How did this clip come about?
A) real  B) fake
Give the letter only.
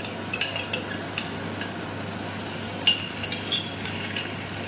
A